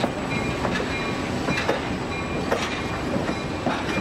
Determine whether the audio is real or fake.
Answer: real